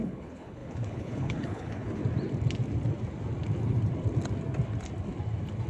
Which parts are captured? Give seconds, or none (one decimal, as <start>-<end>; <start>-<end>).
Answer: 2.0-5.7